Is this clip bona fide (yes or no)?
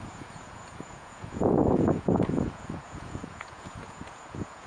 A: no